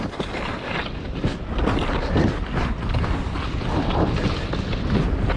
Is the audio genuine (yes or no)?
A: yes